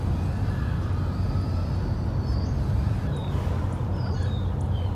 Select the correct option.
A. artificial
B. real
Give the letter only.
B